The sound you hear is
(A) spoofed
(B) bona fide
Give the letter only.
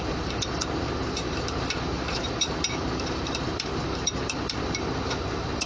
A